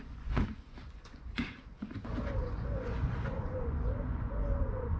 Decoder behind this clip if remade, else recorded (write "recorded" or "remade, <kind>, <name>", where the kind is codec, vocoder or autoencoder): remade, vocoder, Vocos